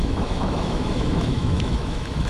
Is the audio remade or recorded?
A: remade